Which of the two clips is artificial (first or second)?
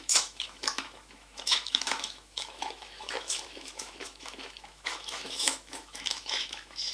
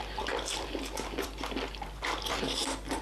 first